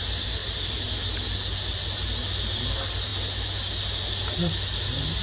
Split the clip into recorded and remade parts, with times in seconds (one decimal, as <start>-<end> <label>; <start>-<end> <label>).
0.0-0.4 remade; 0.4-2.7 recorded; 2.7-3.1 remade; 3.1-4.2 recorded; 4.2-5.2 remade